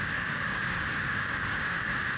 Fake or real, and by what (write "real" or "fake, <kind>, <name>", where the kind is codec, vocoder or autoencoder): fake, codec, DAC